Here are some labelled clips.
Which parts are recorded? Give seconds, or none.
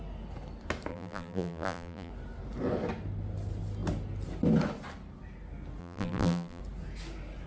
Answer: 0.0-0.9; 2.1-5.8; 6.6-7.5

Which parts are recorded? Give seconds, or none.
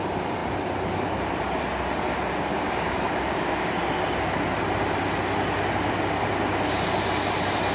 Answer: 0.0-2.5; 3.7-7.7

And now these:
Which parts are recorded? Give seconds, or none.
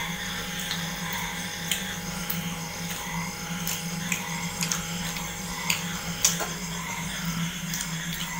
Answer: 0.0-8.4